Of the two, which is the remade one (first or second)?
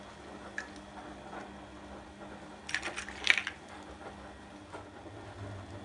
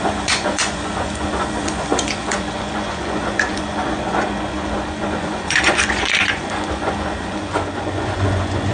second